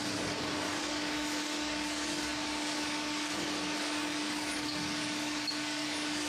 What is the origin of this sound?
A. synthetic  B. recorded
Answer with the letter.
A